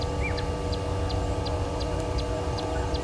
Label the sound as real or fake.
real